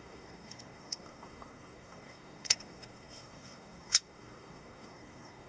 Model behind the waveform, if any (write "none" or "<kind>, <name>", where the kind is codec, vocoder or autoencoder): codec, SNAC